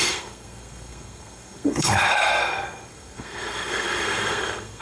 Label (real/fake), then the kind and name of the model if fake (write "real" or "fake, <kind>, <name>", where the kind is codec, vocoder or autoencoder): fake, codec, SNAC